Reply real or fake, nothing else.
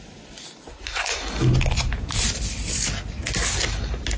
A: real